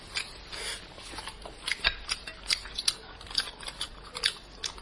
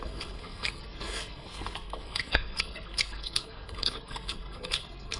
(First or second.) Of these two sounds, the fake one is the second